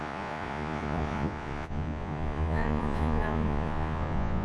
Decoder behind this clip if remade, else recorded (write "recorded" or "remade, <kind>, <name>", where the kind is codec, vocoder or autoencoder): remade, vocoder, Vocos